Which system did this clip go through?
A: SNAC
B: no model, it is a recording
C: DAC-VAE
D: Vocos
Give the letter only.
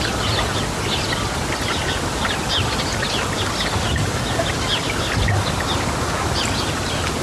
B